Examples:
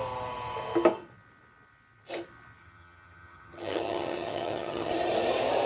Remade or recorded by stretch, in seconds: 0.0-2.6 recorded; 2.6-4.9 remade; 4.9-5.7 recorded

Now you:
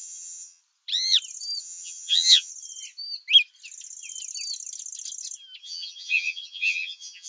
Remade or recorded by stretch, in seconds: 0.0-0.6 remade; 0.6-1.6 recorded; 1.6-2.5 remade; 2.5-5.6 recorded; 5.6-7.3 remade

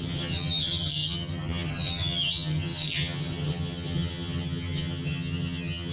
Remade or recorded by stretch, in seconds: 0.0-5.9 remade

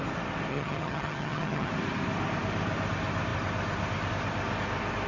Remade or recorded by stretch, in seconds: 0.0-0.5 recorded; 0.5-1.7 remade; 1.7-5.1 recorded

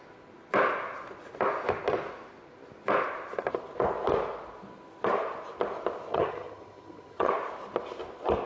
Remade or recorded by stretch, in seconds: 0.0-6.1 recorded; 6.1-7.3 remade; 7.3-8.5 recorded

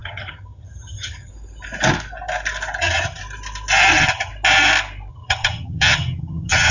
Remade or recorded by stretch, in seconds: 0.0-1.3 remade; 1.3-2.8 recorded; 2.8-3.2 remade; 3.2-3.9 recorded; 3.9-4.3 remade; 4.3-5.1 recorded; 5.1-6.7 remade

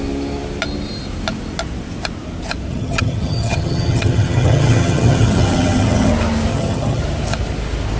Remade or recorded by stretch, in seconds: 0.0-2.7 recorded; 2.7-6.1 remade; 6.1-6.5 recorded; 6.5-7.0 remade; 7.0-8.0 recorded

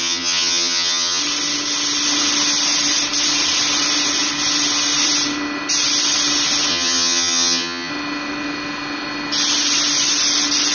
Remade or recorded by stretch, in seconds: 0.0-1.2 remade; 1.2-6.7 recorded; 6.7-7.9 remade; 7.9-10.7 recorded